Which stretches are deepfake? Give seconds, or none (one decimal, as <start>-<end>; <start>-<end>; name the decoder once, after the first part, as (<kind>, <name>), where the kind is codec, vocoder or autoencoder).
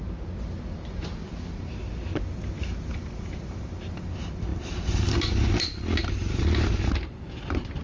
none